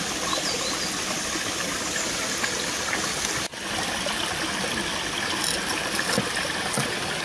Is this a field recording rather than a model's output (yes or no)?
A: yes